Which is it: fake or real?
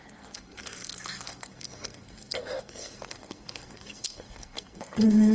fake